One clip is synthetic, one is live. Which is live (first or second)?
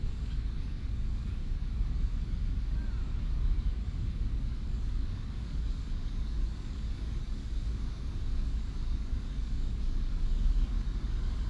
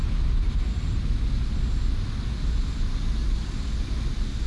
second